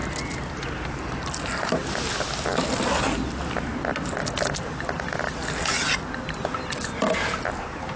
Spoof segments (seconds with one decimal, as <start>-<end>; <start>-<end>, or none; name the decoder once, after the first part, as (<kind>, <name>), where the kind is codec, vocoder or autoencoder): none